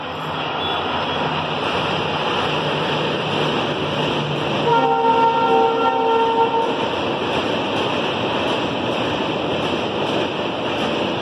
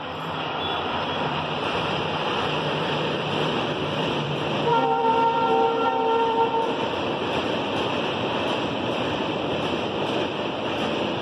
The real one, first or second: first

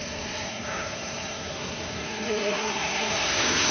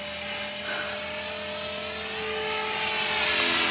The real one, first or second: second